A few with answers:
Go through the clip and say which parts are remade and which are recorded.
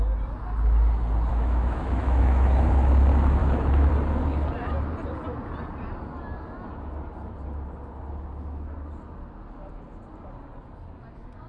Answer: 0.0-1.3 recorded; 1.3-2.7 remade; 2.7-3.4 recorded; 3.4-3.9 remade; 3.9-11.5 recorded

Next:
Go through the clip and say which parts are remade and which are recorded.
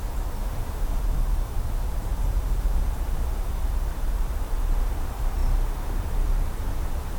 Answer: 0.0-0.4 remade; 0.4-1.0 recorded; 1.0-2.1 remade; 2.1-3.5 recorded; 3.5-5.4 remade; 5.4-6.0 recorded; 6.0-7.2 remade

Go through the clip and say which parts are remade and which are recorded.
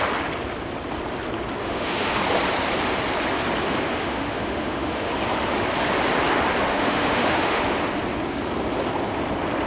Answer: 0.0-1.6 recorded; 1.6-2.2 remade; 2.2-4.0 recorded; 4.0-5.1 remade; 5.1-6.7 recorded; 6.7-7.6 remade; 7.6-9.7 recorded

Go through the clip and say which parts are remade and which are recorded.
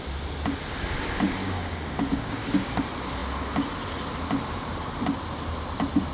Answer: 0.0-1.4 recorded; 1.4-2.8 remade; 2.8-6.1 recorded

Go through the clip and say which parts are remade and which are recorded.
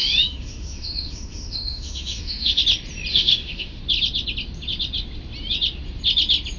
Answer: 0.0-2.6 remade; 2.6-3.1 recorded; 3.1-3.8 remade; 3.8-6.6 recorded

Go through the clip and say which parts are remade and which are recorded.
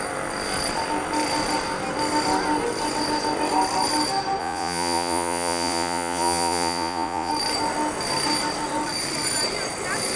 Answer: 0.0-4.4 recorded; 4.4-7.3 remade; 7.3-10.2 recorded